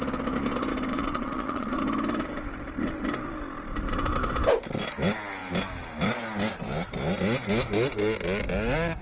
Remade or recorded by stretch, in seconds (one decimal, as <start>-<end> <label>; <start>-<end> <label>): 0.0-0.9 recorded; 0.9-1.8 remade; 1.8-9.0 recorded